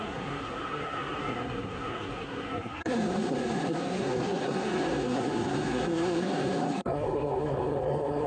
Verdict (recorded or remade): remade